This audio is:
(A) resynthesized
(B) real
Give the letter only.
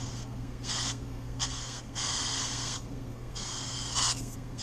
A